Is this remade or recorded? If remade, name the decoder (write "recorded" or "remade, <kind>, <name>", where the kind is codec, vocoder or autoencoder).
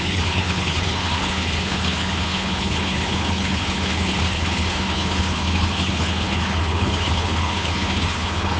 remade, codec, HILCodec